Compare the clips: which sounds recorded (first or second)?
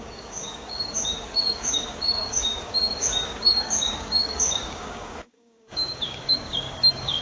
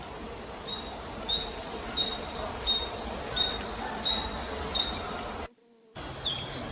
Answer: second